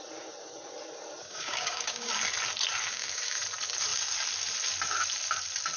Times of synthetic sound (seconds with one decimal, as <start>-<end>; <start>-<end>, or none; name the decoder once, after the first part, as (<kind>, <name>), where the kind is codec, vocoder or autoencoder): 1.2-2.1 (codec, DAC); 2.9-3.4